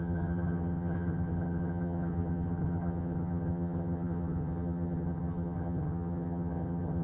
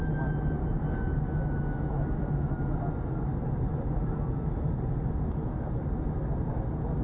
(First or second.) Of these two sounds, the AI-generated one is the first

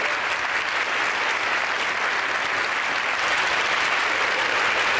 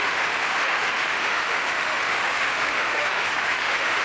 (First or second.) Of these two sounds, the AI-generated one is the second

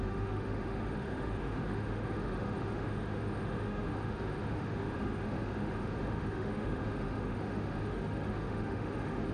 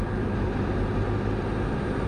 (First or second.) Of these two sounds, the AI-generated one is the first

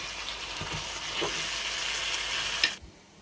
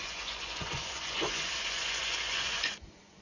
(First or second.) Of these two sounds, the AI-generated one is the second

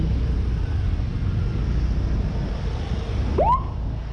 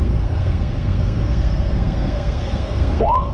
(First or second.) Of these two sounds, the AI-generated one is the second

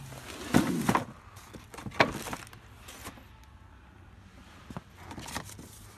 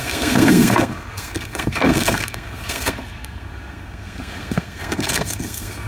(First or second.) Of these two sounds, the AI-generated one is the second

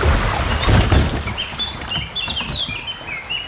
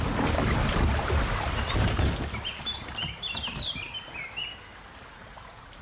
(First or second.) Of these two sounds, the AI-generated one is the second